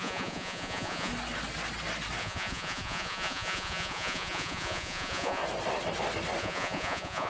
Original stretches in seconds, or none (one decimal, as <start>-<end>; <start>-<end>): 1.1-2.2; 5.4-6.4